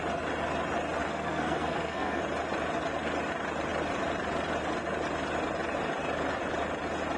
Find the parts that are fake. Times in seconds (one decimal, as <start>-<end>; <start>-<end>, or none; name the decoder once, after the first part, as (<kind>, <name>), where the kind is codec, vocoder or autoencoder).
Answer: 1.1-2.2 (codec, SNAC)